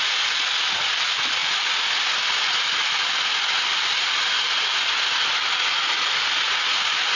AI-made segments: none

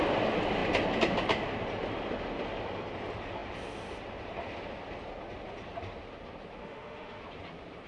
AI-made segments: 6.6-7.2 (autoencoder, DAC-VAE)

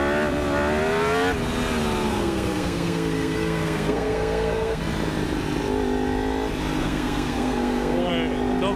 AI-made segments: 2.1-4.8 (codec, SNAC); 6.8-8.1

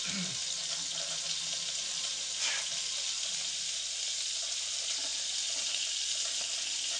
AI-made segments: none

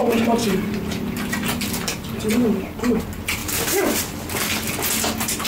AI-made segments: 0.4-3.0 (vocoder, BigVGAN v2); 3.4-4.5

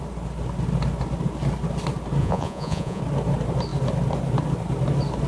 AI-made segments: 2.2-3.0 (vocoder, Vocos)

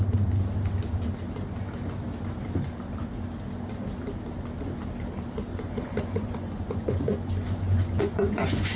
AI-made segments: 5.5-8.8 (vocoder, Vocos)

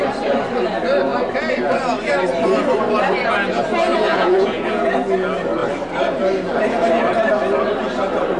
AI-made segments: 3.9-4.9 (vocoder, Vocos)